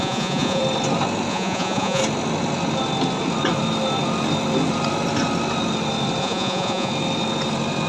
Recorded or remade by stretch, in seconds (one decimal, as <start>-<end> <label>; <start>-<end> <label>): 0.0-0.6 remade; 0.6-1.3 recorded; 1.3-2.0 remade; 2.0-6.2 recorded; 6.2-6.9 remade; 6.9-7.9 recorded